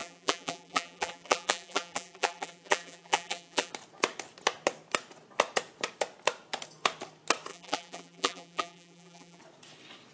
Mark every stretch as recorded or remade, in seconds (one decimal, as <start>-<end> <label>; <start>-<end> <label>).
0.0-3.7 remade; 3.7-7.5 recorded; 7.5-9.4 remade; 9.4-10.1 recorded